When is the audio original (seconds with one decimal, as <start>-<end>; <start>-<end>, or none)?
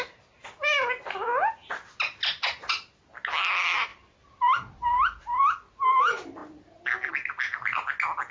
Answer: 0.0-3.9; 5.4-8.3